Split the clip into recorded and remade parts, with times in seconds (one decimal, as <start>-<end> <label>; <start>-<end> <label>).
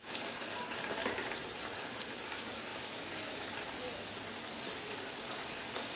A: 0.0-1.0 remade; 1.0-1.8 recorded; 1.8-6.0 remade